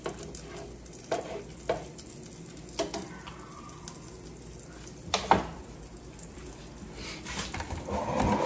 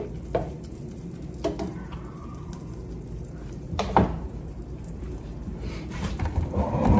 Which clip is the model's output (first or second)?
second